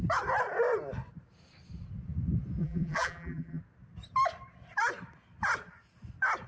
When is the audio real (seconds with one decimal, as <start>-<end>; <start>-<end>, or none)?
0.0-2.6; 3.6-6.5